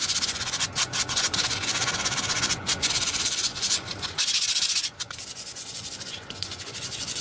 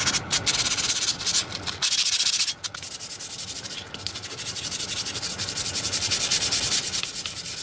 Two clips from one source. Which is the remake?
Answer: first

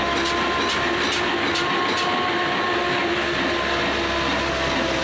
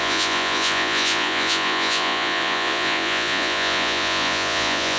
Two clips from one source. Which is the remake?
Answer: second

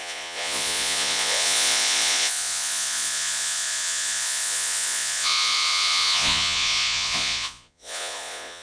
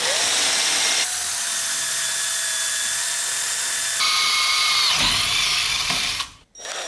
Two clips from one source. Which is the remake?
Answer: first